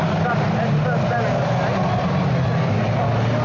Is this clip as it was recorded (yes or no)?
yes